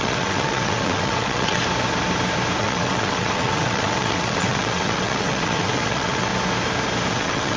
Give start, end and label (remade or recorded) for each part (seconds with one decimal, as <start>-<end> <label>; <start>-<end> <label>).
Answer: 0.0-1.6 remade; 1.6-2.6 recorded; 2.6-6.3 remade; 6.3-7.1 recorded; 7.1-7.6 remade